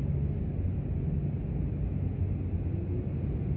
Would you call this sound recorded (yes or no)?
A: yes